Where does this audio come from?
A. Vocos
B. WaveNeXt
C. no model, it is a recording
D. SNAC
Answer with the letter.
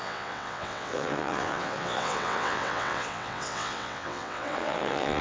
B